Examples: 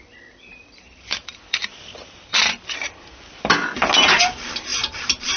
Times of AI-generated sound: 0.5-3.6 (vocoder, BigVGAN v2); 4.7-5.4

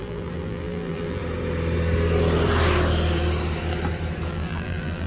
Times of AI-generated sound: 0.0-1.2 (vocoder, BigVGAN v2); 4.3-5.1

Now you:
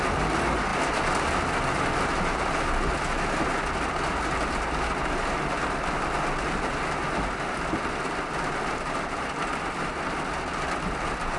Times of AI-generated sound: none